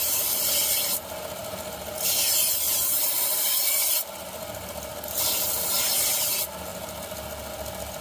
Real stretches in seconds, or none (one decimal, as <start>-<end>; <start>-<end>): 0.0-8.0